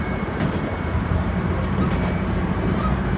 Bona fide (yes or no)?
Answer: no